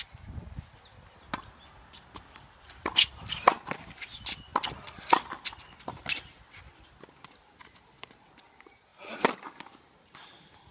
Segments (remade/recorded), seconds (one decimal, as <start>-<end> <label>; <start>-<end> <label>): 0.0-10.7 recorded